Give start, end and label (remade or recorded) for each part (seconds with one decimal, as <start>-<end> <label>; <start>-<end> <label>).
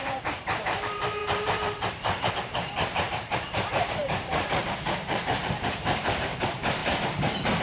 0.0-6.8 remade; 6.8-7.6 recorded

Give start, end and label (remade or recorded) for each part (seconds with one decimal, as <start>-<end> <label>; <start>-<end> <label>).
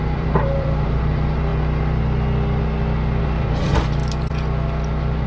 0.0-1.5 remade; 1.5-3.2 recorded; 3.2-4.0 remade; 4.0-5.3 recorded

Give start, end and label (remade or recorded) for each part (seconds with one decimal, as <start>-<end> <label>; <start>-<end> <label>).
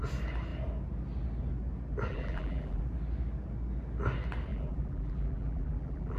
0.0-2.1 recorded; 2.1-2.8 remade; 2.8-4.5 recorded; 4.5-6.2 remade